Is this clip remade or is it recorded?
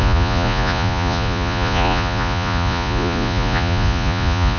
remade